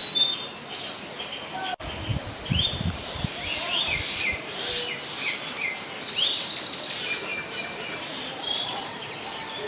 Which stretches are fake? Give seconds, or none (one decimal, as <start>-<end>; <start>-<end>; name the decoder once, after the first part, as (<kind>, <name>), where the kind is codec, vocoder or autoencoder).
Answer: 2.1-4.7 (vocoder, BigVGAN v2); 7.3-9.1